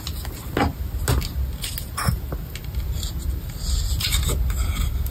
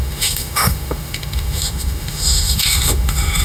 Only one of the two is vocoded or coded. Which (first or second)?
second